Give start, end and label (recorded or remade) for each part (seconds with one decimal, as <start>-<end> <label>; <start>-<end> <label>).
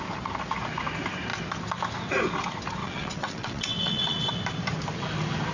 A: 0.0-2.8 recorded; 2.8-4.3 remade; 4.3-5.5 recorded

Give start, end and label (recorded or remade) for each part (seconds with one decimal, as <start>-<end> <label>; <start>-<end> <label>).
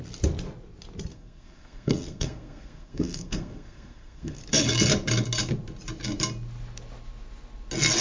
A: 0.0-1.1 recorded; 1.1-4.4 remade; 4.4-8.0 recorded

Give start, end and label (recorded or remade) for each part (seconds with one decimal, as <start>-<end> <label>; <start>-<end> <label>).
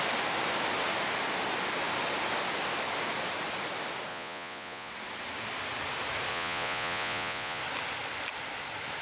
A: 0.0-4.1 recorded; 4.1-4.9 remade; 4.9-6.3 recorded; 6.3-7.6 remade; 7.6-9.0 recorded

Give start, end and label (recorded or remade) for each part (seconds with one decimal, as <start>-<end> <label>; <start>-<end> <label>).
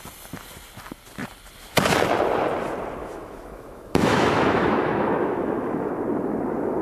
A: 0.0-3.0 recorded; 3.0-5.9 remade; 5.9-6.8 recorded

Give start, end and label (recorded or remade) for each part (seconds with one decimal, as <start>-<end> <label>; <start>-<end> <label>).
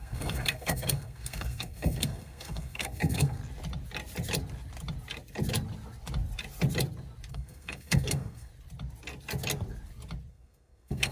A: 0.0-3.4 remade; 3.4-7.3 recorded; 7.3-8.5 remade; 8.5-10.3 recorded; 10.3-11.1 remade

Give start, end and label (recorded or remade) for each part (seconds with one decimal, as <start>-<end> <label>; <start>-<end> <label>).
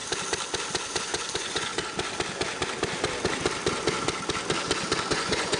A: 0.0-1.0 recorded; 1.0-1.7 remade; 1.7-5.1 recorded; 5.1-5.6 remade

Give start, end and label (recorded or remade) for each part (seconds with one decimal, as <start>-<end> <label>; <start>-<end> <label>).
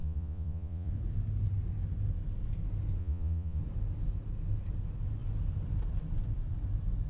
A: 0.0-0.9 remade; 0.9-3.0 recorded; 3.0-3.6 remade; 3.6-7.1 recorded